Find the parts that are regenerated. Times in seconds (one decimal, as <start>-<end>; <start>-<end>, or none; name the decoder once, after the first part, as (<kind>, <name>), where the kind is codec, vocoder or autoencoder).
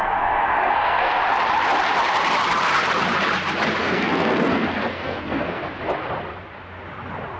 0.0-1.2 (codec, SNAC); 3.8-5.6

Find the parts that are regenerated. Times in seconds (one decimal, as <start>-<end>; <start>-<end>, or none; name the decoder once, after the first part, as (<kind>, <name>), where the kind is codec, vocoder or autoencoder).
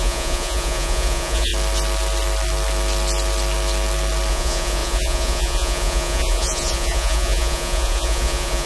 0.0-1.5 (vocoder, Vocos); 4.3-8.7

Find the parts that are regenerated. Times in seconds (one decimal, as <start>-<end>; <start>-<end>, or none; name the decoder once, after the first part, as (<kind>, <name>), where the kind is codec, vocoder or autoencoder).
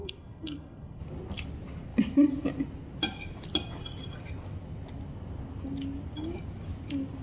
0.0-1.0 (codec, SNAC)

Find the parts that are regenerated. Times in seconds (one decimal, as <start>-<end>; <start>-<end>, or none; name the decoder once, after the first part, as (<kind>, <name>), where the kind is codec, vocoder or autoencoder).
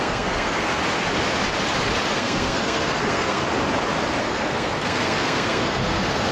0.0-0.7 (codec, SNAC); 2.1-3.4; 4.2-6.3